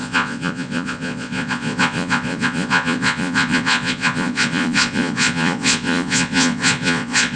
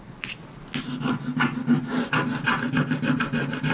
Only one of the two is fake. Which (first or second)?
first